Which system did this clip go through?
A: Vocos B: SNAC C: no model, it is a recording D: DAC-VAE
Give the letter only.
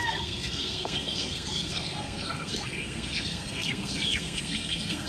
B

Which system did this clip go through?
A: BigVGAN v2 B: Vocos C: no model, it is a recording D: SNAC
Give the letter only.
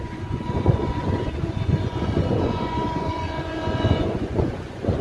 B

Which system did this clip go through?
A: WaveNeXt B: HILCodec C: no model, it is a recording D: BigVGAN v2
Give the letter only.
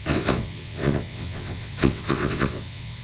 A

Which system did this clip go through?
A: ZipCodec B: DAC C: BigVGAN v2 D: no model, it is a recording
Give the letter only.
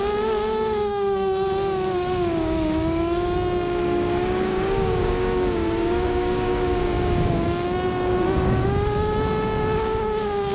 B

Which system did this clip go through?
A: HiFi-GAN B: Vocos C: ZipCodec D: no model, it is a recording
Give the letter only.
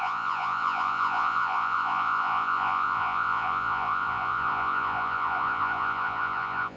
B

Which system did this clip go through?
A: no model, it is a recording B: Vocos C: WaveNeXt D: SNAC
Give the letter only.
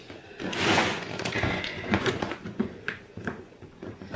B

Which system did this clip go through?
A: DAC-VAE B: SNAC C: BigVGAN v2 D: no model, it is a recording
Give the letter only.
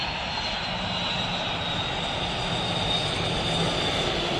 D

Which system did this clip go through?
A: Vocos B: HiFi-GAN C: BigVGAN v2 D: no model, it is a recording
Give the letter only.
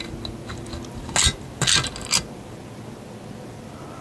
D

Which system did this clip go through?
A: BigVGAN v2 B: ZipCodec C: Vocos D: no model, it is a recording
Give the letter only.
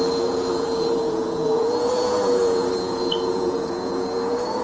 C